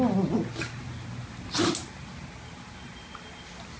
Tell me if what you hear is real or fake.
real